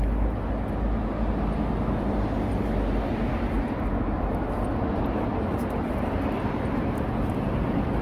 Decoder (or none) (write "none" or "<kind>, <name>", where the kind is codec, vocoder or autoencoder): none